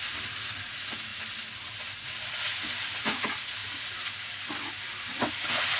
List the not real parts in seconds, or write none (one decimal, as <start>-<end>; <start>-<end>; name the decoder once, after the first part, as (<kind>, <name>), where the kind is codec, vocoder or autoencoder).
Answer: none

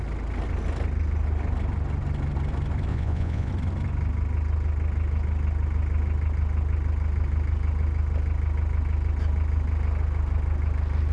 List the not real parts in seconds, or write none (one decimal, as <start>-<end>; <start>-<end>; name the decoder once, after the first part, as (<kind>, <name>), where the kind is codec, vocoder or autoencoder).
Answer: 2.9-3.5 (vocoder, Vocos)

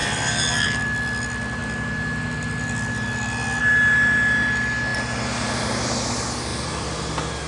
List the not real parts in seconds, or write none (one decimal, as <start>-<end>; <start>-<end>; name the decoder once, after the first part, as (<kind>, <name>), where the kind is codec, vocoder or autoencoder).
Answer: 0.0-0.8 (vocoder, BigVGAN v2); 6.5-7.1

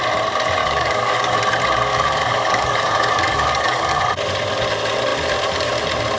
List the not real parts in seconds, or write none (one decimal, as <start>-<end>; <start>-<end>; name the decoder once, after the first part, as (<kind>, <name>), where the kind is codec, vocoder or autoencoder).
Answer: 0.6-1.4 (codec, DAC); 1.9-4.0

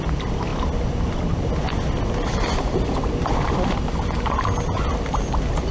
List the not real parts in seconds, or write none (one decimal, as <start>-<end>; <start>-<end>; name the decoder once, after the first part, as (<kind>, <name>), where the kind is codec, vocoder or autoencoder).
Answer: none

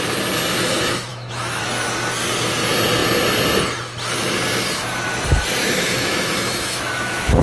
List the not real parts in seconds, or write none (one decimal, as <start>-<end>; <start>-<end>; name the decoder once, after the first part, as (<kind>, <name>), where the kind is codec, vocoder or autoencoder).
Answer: 1.1-1.6 (autoencoder, DAC-VAE); 5.6-7.4